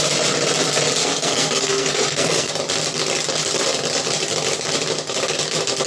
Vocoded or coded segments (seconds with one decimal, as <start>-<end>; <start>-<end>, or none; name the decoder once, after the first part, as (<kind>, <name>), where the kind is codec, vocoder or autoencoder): 1.0-2.5 (codec, SNAC)